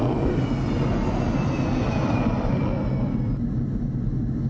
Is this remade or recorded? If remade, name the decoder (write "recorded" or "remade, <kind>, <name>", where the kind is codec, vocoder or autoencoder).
recorded